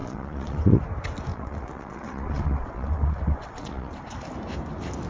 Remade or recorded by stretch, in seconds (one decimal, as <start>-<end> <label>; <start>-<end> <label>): 0.0-0.8 remade; 0.8-1.3 recorded; 1.3-4.0 remade; 4.0-5.1 recorded